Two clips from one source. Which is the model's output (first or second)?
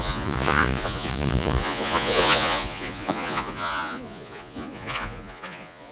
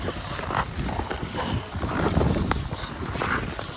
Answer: first